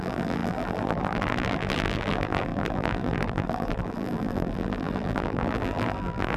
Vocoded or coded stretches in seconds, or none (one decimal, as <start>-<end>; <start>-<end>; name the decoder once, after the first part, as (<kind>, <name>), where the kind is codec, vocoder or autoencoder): 0.0-6.4 (vocoder, BigVGAN v2)